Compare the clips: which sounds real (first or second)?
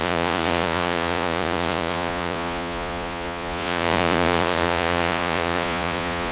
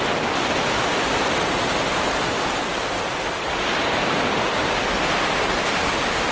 second